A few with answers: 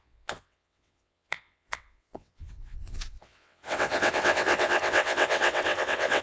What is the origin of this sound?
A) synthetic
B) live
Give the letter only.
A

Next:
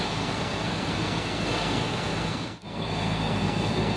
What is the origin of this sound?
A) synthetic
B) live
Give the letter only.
A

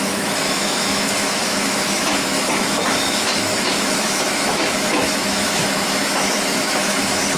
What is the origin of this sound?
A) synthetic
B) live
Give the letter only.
A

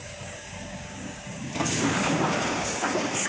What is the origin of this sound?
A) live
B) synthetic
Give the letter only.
B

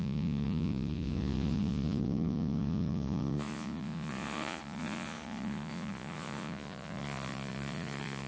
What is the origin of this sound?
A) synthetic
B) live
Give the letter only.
A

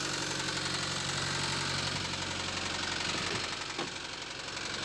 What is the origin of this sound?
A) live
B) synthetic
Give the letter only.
A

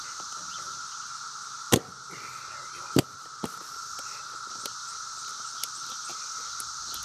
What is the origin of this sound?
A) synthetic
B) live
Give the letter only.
B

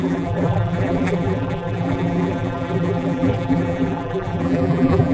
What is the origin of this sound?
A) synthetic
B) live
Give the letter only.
A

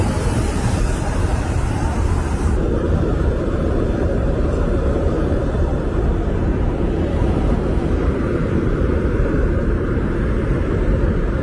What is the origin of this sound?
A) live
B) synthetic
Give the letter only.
B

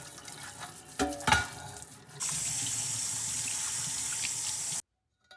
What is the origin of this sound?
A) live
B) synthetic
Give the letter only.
A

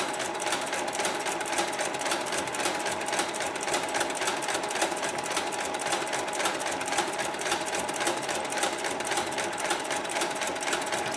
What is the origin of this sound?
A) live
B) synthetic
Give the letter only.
B